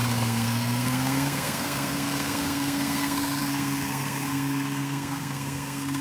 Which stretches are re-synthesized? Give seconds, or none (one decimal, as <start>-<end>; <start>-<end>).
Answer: 0.0-6.0